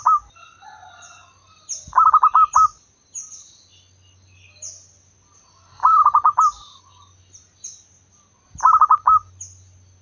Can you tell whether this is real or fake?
real